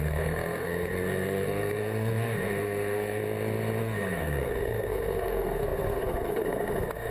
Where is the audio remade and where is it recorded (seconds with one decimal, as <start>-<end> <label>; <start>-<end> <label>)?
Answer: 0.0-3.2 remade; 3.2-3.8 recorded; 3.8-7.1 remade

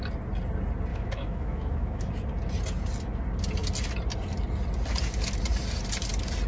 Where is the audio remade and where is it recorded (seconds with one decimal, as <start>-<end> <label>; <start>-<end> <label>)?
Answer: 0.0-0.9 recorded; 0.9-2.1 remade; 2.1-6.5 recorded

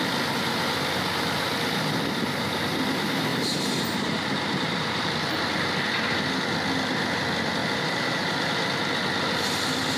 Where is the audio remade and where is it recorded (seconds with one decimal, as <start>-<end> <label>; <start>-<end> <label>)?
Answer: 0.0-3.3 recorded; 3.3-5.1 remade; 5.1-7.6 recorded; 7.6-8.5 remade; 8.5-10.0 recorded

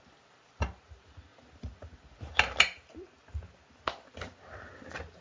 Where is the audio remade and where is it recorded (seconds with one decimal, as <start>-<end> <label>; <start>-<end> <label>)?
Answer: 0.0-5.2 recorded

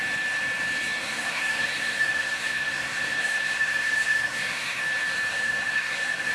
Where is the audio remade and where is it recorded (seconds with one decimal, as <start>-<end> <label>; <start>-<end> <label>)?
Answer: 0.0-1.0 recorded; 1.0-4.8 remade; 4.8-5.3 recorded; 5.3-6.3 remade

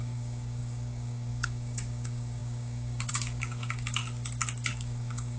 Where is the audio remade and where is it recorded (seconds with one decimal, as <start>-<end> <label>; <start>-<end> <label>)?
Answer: 0.0-4.0 remade; 4.0-4.7 recorded; 4.7-5.4 remade

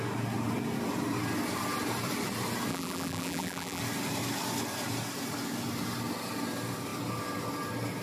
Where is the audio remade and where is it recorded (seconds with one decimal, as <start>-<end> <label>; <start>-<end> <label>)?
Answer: 0.0-2.7 recorded; 2.7-3.8 remade; 3.8-8.0 recorded